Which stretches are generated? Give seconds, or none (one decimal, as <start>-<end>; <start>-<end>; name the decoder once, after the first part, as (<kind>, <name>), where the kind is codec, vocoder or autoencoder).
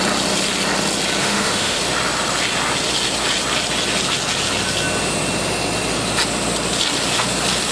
1.2-1.8 (autoencoder, DAC-VAE)